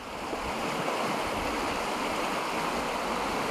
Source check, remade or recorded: recorded